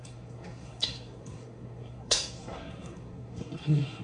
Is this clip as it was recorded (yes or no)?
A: no